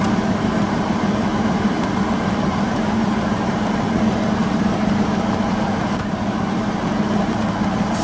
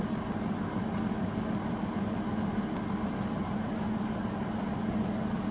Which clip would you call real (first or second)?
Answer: second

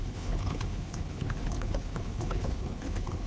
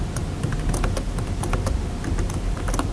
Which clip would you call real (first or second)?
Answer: second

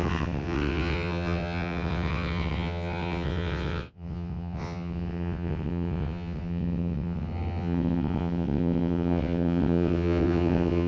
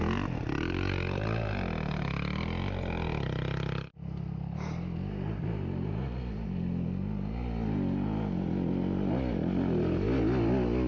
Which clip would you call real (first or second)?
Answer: second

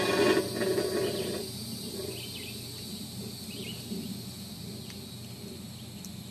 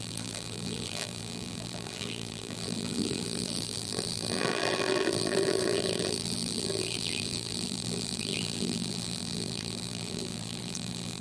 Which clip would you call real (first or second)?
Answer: first